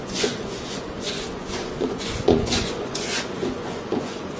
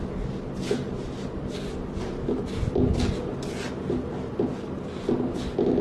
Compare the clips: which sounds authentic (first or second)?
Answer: second